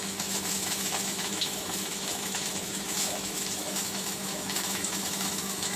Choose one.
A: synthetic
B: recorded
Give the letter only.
A